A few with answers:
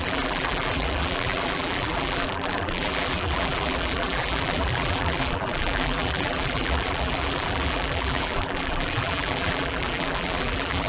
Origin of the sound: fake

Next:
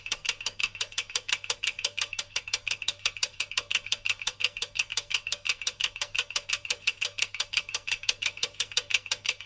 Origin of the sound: fake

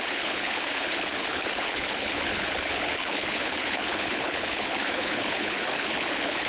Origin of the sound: fake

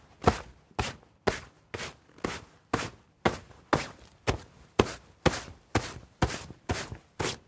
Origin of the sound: real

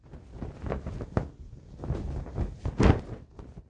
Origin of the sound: real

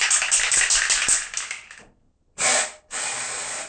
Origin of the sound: real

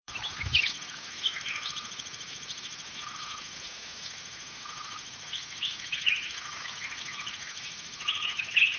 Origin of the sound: fake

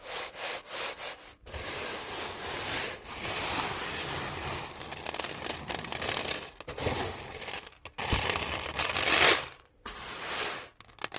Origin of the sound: real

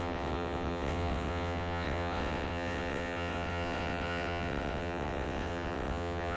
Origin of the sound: fake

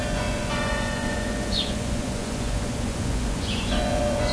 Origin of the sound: fake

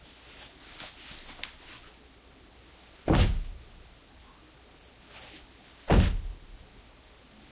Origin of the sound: real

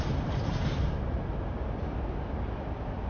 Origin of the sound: real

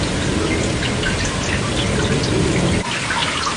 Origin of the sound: real